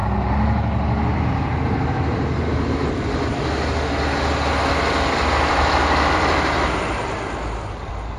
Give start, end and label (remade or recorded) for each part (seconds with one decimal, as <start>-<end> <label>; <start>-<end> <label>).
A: 0.0-4.7 recorded; 4.7-8.2 remade